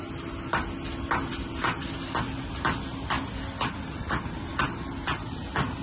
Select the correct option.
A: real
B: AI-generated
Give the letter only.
A